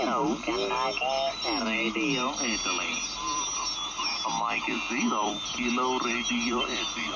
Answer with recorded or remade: recorded